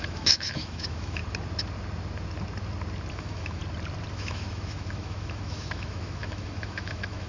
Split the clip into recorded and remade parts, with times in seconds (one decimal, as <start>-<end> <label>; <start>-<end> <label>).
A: 0.0-1.2 remade; 1.2-3.1 recorded; 3.1-3.6 remade; 3.6-4.1 recorded; 4.1-7.3 remade